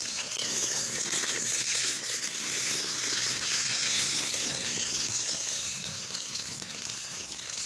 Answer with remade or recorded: remade